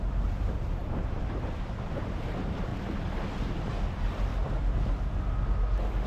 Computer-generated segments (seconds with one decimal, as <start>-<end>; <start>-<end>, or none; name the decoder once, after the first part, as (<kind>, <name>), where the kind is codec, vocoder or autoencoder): 0.0-2.7 (vocoder, BigVGAN v2); 3.3-4.3